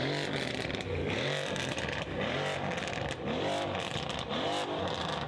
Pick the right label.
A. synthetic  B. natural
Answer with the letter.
A